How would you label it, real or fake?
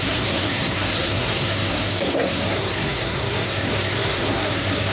fake